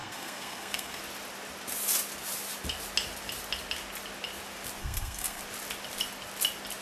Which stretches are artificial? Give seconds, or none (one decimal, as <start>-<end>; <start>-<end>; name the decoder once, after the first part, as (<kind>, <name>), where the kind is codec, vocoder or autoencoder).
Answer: 0.0-1.0 (codec, SNAC); 4.8-5.4